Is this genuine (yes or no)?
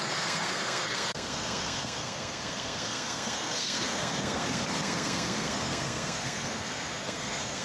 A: no